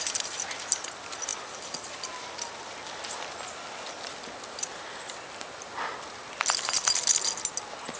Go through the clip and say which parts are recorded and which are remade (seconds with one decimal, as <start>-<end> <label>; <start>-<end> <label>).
0.0-8.0 recorded